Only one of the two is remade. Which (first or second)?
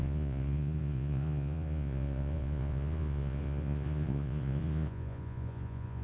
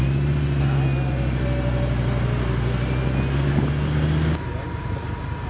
first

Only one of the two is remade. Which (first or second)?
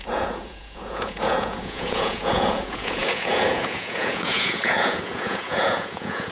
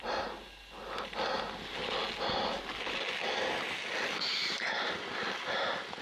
first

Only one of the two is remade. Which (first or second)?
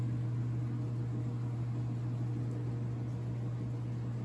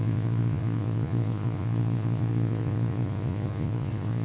second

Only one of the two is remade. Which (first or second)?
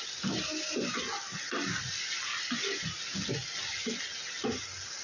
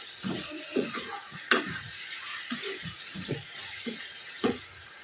second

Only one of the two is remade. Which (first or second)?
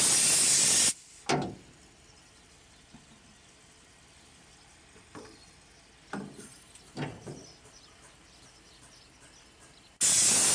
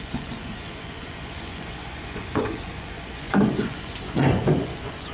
second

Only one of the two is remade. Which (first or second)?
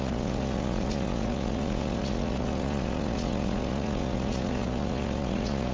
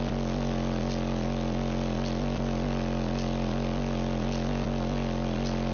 first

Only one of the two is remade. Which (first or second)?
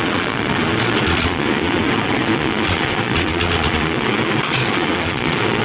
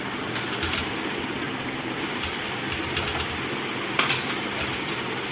first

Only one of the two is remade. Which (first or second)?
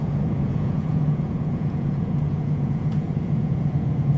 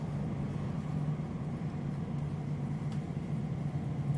first